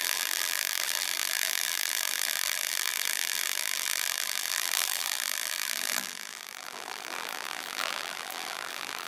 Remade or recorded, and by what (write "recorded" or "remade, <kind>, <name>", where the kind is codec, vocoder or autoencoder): remade, vocoder, BigVGAN v2